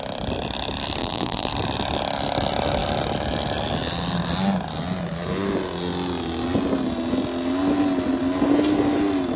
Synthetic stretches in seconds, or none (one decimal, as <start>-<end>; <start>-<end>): 1.0-1.5

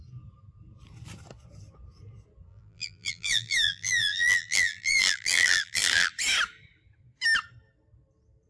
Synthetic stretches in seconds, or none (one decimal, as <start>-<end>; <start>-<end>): 2.5-6.1